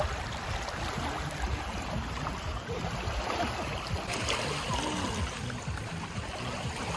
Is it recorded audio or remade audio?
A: recorded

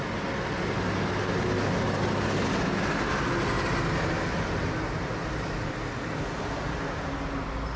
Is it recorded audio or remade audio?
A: recorded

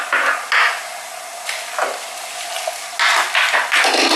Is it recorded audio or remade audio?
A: recorded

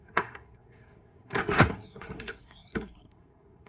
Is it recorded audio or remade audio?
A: remade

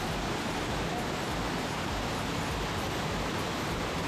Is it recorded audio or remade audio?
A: recorded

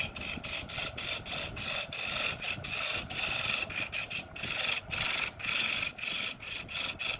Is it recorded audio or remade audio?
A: recorded